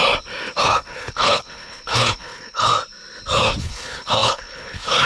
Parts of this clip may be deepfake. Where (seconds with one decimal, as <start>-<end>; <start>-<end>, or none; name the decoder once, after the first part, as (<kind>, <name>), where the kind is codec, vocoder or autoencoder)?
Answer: 0.6-2.7 (codec, HILCodec); 3.6-5.1